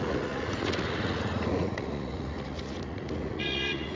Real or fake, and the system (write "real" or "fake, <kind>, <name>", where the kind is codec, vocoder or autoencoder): fake, vocoder, Vocos